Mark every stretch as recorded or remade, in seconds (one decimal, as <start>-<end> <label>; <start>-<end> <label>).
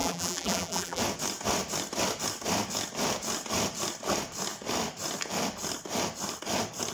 0.0-1.0 remade; 1.0-6.9 recorded